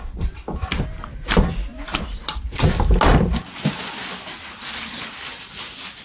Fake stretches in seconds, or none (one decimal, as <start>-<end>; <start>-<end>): none

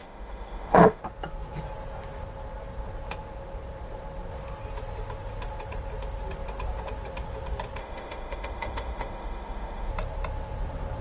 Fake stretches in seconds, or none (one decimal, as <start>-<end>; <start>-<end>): 0.0-1.0; 7.8-9.9

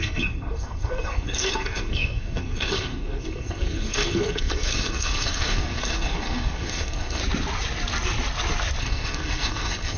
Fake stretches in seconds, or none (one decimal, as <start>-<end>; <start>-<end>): 0.0-7.2; 8.8-10.0

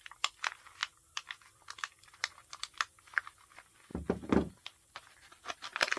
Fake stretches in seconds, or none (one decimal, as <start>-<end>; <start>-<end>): none

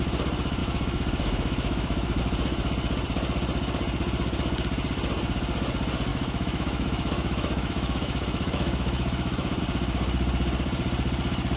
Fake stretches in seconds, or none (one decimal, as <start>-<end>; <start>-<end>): 0.6-2.2; 6.1-9.6

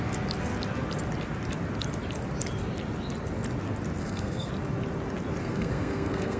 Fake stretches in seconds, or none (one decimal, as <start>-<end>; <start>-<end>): 4.0-4.5; 5.4-6.4

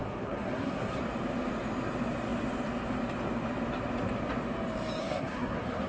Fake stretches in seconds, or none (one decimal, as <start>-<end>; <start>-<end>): 0.0-1.0; 5.0-5.9

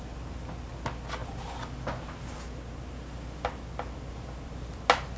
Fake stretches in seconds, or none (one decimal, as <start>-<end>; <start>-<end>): none